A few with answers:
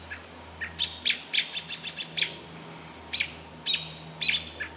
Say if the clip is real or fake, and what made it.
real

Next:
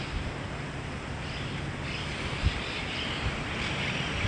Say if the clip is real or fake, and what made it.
real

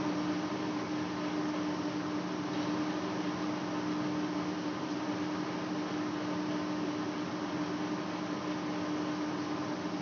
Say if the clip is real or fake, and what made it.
real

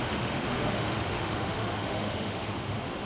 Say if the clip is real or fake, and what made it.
fake, autoencoder, DAC-VAE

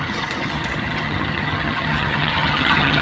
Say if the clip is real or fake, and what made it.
fake, vocoder, HiFi-GAN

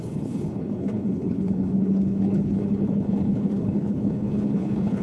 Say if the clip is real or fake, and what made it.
fake, codec, HILCodec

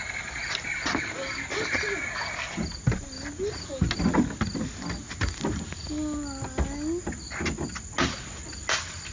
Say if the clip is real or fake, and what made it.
real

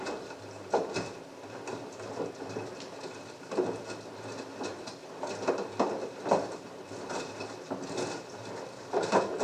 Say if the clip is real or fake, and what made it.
real